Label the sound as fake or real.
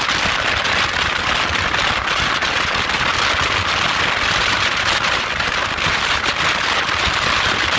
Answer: real